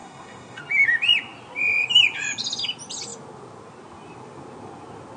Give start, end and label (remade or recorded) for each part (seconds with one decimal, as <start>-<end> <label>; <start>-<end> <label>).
0.0-0.6 remade; 0.6-5.2 recorded